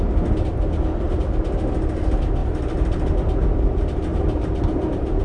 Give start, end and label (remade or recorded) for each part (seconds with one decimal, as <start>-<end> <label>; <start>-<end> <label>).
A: 0.0-2.4 recorded; 2.4-3.5 remade; 3.5-4.1 recorded; 4.1-5.2 remade

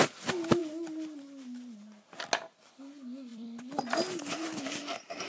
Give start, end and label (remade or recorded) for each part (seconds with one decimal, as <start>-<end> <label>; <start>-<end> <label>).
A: 0.0-3.3 recorded; 3.3-4.8 remade; 4.8-5.3 recorded

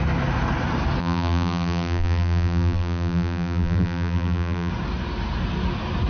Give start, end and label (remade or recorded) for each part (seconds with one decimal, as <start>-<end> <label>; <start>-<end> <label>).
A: 0.0-1.0 recorded; 1.0-4.7 remade; 4.7-6.1 recorded

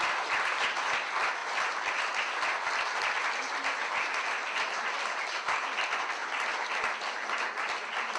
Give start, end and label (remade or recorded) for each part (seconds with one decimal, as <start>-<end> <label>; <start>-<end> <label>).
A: 0.0-8.2 recorded

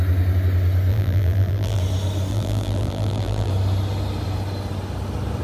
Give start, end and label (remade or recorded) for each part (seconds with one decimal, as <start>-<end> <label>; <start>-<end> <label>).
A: 0.0-0.9 recorded; 0.9-1.8 remade; 1.8-2.3 recorded; 2.3-3.5 remade; 3.5-5.4 recorded

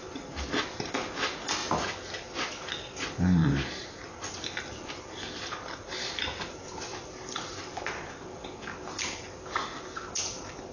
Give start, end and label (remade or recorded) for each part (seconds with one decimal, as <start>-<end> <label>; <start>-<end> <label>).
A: 0.0-3.4 recorded; 3.4-4.6 remade; 4.6-6.9 recorded; 6.9-7.5 remade; 7.5-10.7 recorded

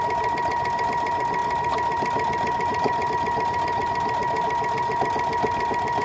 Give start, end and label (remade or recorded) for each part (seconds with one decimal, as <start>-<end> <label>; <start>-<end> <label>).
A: 0.0-1.4 recorded; 1.4-3.1 remade; 3.1-6.0 recorded

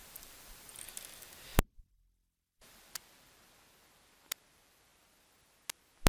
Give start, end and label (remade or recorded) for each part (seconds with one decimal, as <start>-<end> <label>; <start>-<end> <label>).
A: 0.0-4.9 remade; 4.9-6.1 recorded